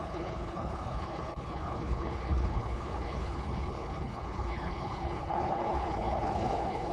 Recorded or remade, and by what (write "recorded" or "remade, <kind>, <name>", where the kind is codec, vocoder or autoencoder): remade, codec, HILCodec